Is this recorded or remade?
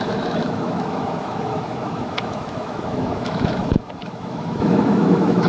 remade